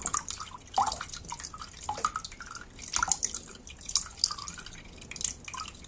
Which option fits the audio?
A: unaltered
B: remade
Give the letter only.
A